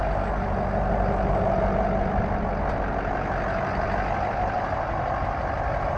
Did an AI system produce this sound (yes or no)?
no